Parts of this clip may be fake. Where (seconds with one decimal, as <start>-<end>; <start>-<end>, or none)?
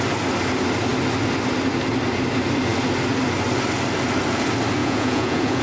4.8-5.6